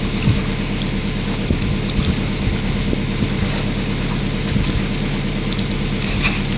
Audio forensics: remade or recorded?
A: recorded